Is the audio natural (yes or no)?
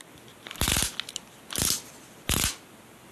yes